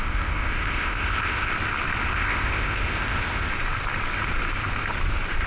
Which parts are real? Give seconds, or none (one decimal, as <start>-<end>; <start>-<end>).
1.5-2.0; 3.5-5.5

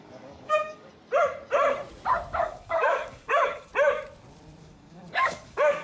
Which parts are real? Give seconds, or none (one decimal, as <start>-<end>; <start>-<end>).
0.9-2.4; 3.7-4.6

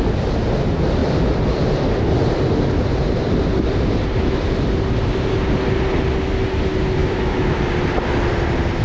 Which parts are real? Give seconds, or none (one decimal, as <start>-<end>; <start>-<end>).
0.0-7.0; 7.6-8.8

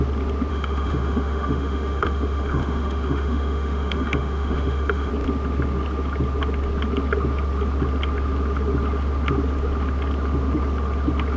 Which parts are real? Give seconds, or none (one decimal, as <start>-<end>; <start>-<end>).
0.0-0.5; 5.1-11.4

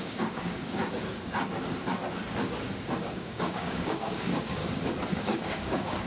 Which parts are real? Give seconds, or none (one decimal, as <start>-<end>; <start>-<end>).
0.8-3.1; 4.6-5.1

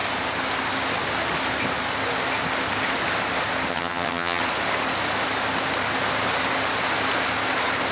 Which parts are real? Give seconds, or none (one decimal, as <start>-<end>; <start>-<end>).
0.0-3.7; 4.4-7.9

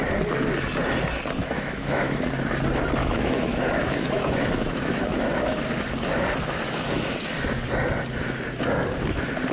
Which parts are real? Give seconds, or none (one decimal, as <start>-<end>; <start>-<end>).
0.0-1.4; 2.2-3.0; 5.6-9.5

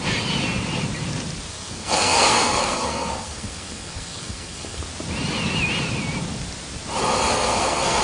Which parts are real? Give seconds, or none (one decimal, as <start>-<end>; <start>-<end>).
0.0-1.5; 4.8-7.3